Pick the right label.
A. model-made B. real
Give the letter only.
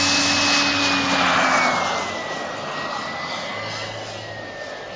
B